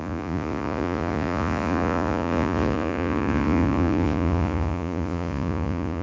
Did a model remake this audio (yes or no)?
yes